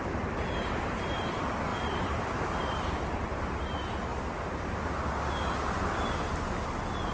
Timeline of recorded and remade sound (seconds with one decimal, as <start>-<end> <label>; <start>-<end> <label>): 0.0-1.7 recorded; 1.7-2.9 remade; 2.9-4.1 recorded; 4.1-5.0 remade; 5.0-7.1 recorded